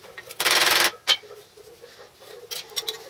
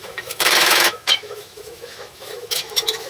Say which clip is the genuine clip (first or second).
first